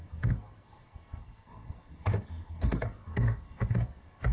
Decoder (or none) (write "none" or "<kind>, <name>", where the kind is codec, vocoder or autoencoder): codec, SNAC